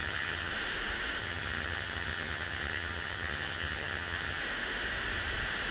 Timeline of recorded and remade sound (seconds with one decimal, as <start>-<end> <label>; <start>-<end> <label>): 0.0-0.5 remade; 0.5-1.2 recorded; 1.2-4.4 remade; 4.4-5.7 recorded